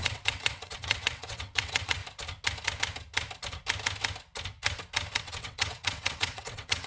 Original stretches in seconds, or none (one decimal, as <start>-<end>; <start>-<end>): 2.0-5.2